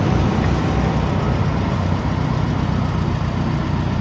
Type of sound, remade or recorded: recorded